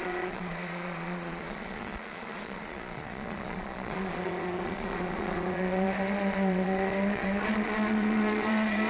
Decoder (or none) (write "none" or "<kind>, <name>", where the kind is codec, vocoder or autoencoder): vocoder, Vocos